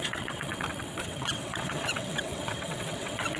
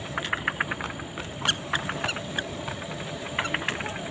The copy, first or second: first